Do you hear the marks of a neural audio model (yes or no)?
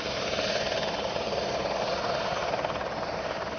no